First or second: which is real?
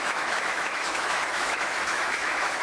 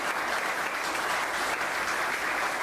second